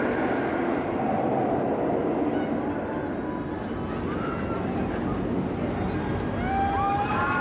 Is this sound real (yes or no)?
yes